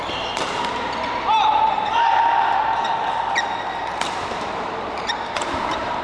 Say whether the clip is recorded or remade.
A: remade